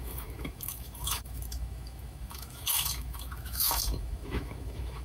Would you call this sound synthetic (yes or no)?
yes